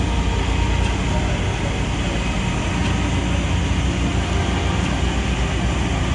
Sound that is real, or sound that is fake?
real